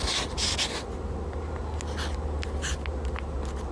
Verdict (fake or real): real